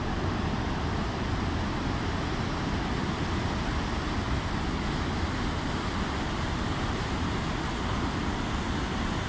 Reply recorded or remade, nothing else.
recorded